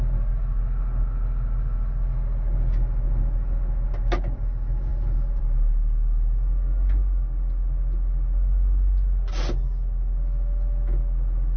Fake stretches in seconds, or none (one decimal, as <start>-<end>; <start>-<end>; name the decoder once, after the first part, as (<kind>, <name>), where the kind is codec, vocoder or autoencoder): none